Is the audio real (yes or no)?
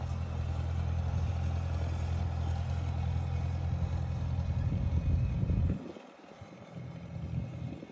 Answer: yes